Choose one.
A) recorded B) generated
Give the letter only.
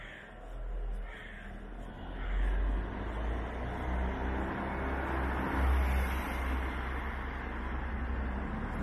A